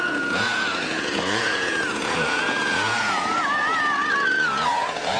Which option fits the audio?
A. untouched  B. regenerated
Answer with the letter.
B